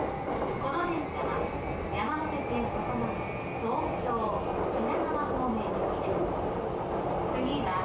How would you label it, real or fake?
real